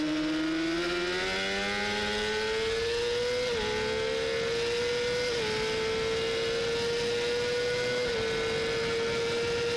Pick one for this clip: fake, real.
real